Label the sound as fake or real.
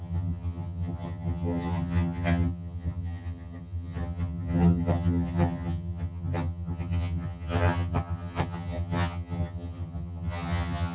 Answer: fake